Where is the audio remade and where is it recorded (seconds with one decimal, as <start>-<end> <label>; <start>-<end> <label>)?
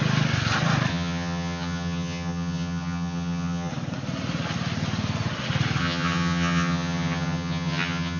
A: 0.0-0.9 recorded; 0.9-3.7 remade; 3.7-5.8 recorded; 5.8-8.2 remade